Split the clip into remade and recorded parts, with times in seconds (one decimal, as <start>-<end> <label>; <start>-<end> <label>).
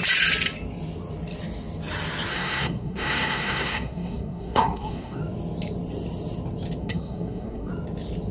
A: 0.0-2.3 recorded; 2.3-5.2 remade; 5.2-6.8 recorded; 6.8-7.7 remade; 7.7-8.3 recorded